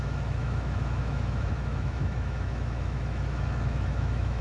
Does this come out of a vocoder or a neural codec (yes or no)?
yes